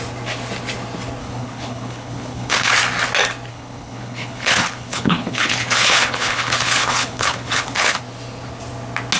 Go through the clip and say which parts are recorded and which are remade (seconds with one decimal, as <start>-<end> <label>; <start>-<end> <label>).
0.0-1.2 recorded; 1.2-2.7 remade; 2.7-3.5 recorded; 3.5-8.0 remade; 8.0-9.2 recorded